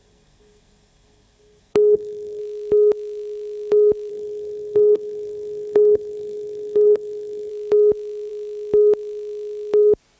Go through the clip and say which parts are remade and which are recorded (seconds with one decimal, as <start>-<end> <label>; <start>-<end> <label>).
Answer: 0.0-2.4 remade; 2.4-4.1 recorded; 4.1-7.5 remade; 7.5-10.2 recorded